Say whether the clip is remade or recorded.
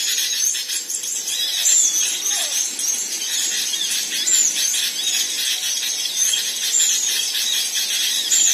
recorded